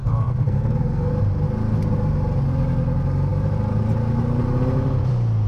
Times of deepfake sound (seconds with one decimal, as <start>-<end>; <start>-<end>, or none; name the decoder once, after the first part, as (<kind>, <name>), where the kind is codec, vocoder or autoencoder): 0.0-1.1 (codec, SNAC)